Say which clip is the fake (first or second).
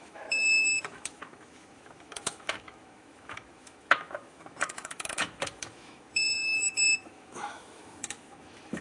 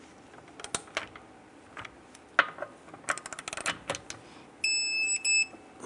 first